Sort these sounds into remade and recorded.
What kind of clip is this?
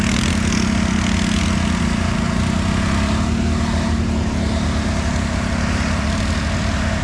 recorded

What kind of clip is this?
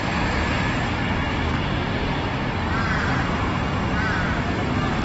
recorded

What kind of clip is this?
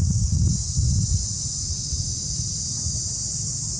recorded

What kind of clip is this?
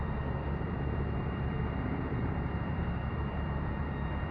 remade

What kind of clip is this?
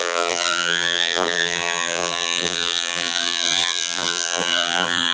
remade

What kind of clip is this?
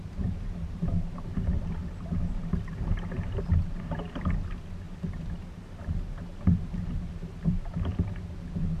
recorded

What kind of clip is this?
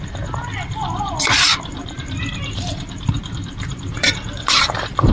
remade